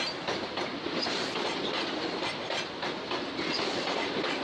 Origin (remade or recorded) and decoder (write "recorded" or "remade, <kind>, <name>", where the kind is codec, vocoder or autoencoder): recorded